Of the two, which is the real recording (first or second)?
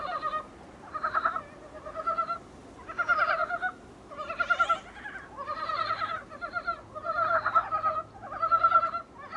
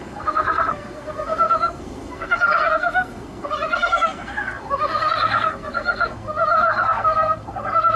first